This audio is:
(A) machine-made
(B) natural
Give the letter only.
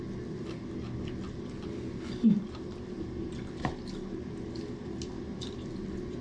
B